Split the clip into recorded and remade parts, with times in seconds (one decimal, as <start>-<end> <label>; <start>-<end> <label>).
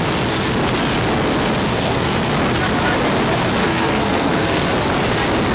0.0-1.7 recorded; 1.7-2.2 remade; 2.2-3.6 recorded; 3.6-4.7 remade; 4.7-5.5 recorded